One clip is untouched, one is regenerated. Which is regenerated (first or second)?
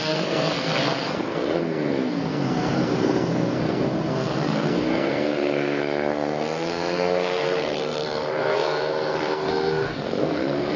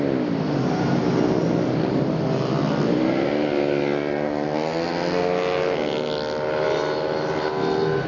first